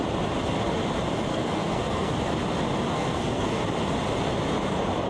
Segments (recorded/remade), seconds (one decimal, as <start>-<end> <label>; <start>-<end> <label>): 0.0-1.3 recorded; 1.3-2.1 remade; 2.1-2.9 recorded; 2.9-3.6 remade; 3.6-5.1 recorded